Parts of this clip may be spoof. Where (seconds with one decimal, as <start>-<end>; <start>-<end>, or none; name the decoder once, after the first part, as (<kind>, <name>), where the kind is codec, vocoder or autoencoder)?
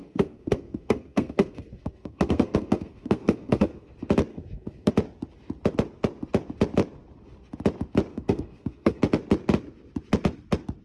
0.0-3.9 (codec, SNAC); 4.3-4.9; 8.1-9.0